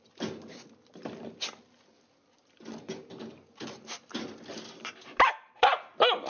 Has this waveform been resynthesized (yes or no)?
no